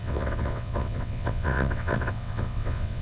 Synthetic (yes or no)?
yes